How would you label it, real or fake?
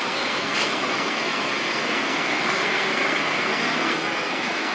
fake